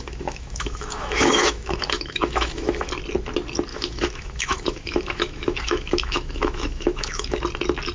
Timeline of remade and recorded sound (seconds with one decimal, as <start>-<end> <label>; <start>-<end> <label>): 0.0-2.9 remade; 2.9-3.7 recorded; 3.7-7.4 remade; 7.4-7.9 recorded